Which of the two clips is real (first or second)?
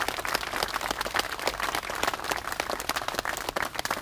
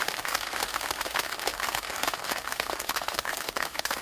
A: first